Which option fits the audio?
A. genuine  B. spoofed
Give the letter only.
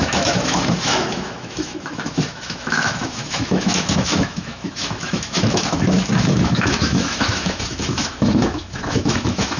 B